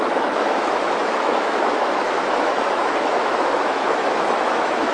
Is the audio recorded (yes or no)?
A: no